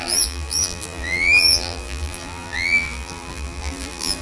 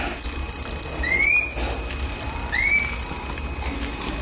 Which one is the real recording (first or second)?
second